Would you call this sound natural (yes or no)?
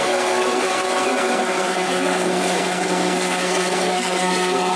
no